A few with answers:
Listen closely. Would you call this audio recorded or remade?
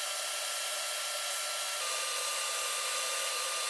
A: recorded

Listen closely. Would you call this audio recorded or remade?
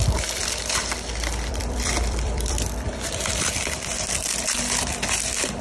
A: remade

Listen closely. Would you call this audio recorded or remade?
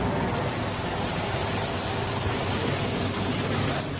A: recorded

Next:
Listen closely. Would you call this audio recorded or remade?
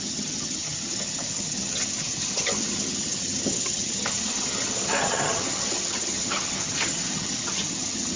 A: remade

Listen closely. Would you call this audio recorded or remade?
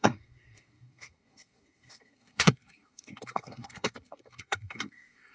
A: remade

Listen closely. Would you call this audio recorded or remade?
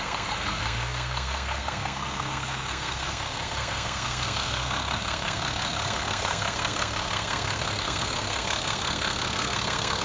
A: remade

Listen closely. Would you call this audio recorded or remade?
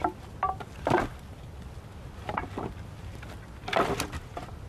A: recorded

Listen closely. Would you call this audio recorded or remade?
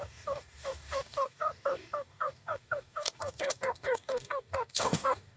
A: remade